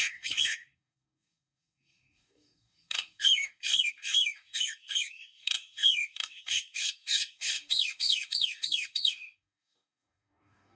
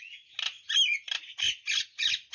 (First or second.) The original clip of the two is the second